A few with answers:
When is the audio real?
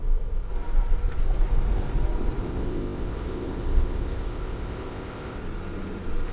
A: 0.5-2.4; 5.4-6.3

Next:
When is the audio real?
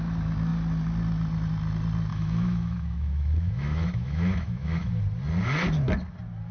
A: 0.0-2.1; 5.0-6.5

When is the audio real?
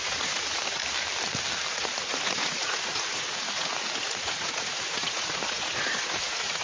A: 0.8-1.7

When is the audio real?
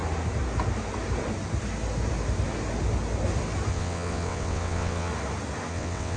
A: 0.0-3.7; 5.1-5.7